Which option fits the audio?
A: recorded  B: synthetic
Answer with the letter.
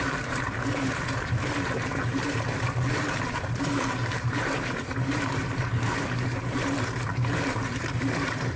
B